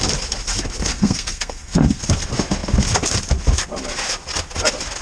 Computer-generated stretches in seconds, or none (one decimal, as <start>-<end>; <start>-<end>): 0.9-2.0